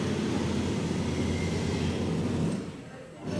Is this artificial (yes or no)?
no